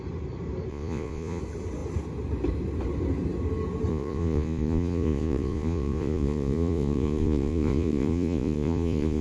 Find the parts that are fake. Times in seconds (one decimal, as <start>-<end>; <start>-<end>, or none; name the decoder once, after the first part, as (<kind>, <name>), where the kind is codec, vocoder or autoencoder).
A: 0.7-1.4 (vocoder, Vocos); 3.9-9.2

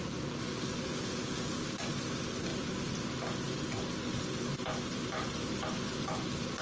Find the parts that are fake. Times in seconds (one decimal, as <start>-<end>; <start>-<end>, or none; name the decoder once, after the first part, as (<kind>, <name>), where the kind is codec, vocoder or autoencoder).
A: 0.9-1.6 (vocoder, Vocos)